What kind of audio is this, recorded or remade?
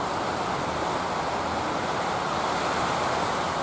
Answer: recorded